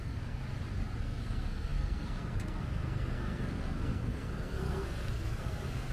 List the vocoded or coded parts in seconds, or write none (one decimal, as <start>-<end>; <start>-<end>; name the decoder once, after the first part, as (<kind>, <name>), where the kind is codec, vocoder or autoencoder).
0.0-0.4 (codec, SNAC); 1.0-5.9